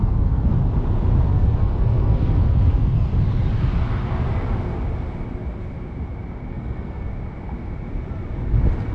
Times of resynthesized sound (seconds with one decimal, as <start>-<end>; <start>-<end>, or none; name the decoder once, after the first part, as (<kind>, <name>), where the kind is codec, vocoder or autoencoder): 0.0-0.6 (codec, SNAC); 1.3-3.1; 6.5-7.1